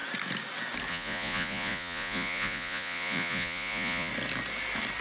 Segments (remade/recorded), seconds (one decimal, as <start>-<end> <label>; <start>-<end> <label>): 0.0-0.9 recorded; 0.9-4.1 remade; 4.1-5.0 recorded